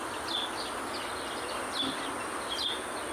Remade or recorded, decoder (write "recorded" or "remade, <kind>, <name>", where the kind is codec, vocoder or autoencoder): recorded